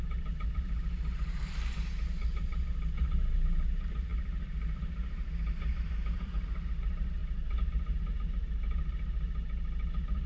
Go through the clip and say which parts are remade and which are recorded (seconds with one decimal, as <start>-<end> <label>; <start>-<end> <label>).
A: 0.0-2.5 remade; 2.5-3.0 recorded; 3.0-7.2 remade; 7.2-10.3 recorded